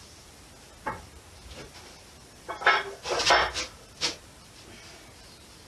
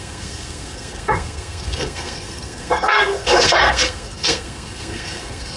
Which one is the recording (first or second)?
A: first